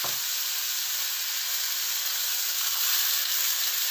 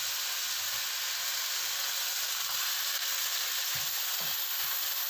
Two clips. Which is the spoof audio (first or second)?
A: first